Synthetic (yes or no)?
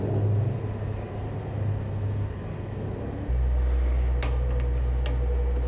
no